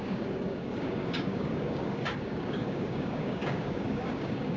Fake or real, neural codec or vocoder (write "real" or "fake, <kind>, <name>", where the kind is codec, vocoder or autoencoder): fake, codec, DAC